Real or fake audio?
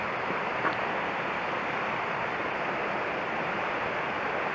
real